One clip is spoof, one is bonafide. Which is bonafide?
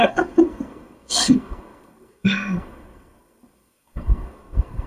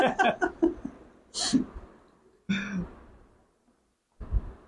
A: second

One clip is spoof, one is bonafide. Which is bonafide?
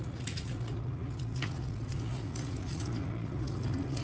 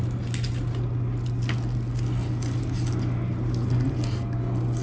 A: second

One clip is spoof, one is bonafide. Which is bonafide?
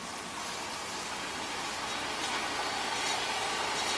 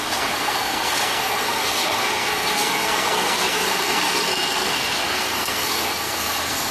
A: first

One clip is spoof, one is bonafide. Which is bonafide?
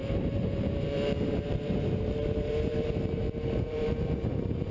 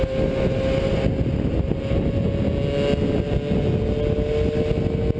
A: second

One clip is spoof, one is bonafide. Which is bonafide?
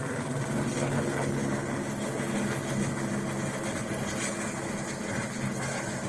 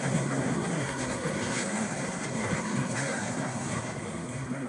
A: first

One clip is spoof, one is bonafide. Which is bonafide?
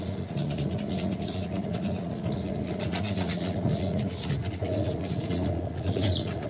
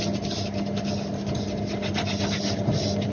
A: second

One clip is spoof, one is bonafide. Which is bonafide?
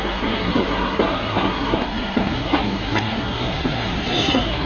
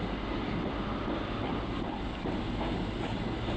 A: second